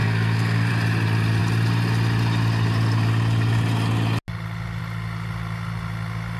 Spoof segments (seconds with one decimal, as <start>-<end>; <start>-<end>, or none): 0.0-0.7